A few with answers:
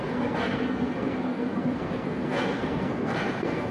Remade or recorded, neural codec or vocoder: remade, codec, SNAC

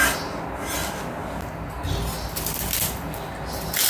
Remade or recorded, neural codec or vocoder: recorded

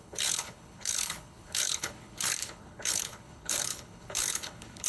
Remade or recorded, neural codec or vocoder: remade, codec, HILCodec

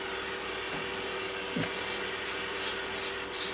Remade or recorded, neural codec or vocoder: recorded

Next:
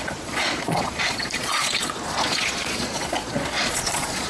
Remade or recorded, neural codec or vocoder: remade, vocoder, Vocos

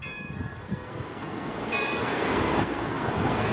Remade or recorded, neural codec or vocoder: remade, codec, SNAC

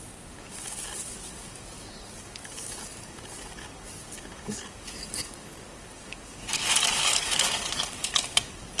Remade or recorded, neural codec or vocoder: remade, codec, DAC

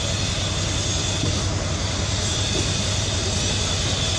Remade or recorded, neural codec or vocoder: recorded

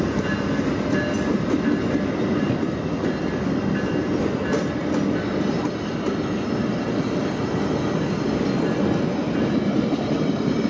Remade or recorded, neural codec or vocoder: recorded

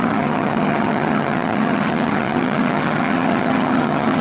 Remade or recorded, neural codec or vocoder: remade, vocoder, HiFi-GAN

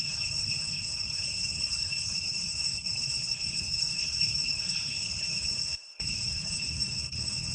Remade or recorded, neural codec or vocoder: remade, codec, HILCodec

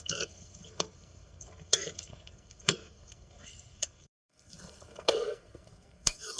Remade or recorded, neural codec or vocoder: remade, codec, SNAC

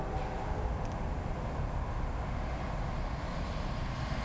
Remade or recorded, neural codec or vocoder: recorded